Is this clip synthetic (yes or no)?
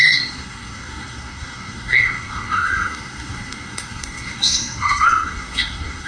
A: yes